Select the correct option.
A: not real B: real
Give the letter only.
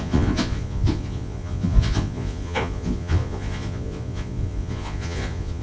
A